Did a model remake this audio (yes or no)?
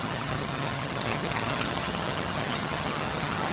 yes